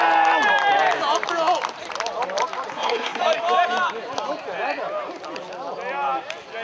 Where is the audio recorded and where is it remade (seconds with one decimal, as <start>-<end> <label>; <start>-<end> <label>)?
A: 0.0-2.7 recorded; 2.7-3.2 remade; 3.2-6.6 recorded